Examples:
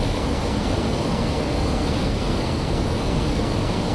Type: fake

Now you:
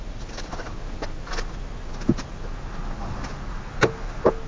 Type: real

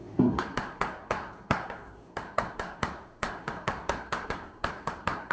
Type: fake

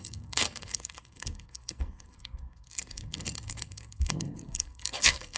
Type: fake